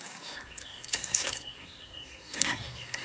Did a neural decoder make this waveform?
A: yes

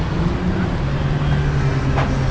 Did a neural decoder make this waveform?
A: no